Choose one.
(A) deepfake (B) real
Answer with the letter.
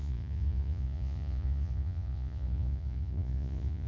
A